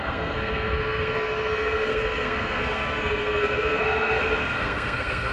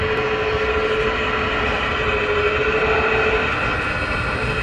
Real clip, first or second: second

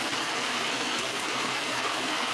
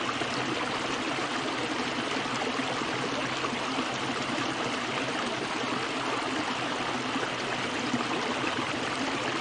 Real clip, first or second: second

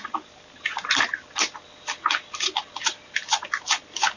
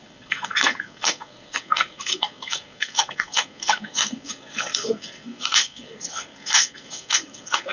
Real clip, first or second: first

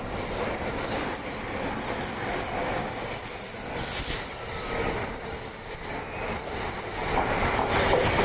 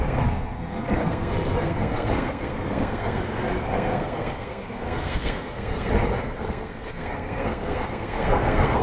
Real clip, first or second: first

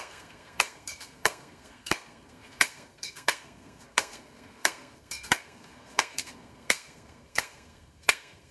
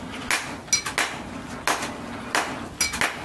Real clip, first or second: second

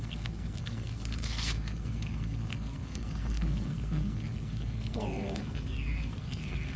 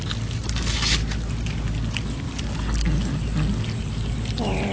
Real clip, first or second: second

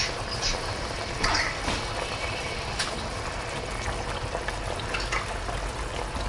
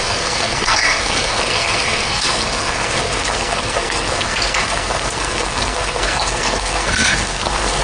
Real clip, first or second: first